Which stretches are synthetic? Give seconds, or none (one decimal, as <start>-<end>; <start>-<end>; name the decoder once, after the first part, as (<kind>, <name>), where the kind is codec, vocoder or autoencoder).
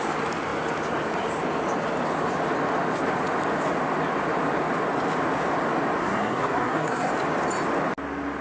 6.0-7.1 (codec, SNAC)